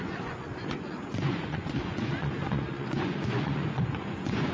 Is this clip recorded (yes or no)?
no